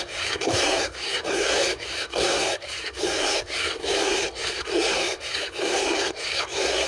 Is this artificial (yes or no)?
yes